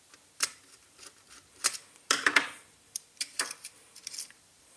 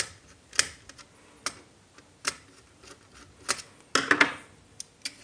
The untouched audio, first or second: second